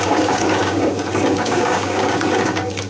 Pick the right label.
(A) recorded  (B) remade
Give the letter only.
B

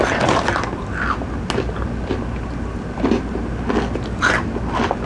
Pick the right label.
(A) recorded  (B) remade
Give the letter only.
A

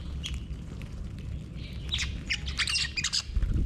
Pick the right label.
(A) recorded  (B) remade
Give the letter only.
A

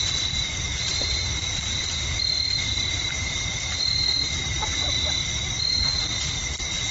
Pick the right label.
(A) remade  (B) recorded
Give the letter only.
B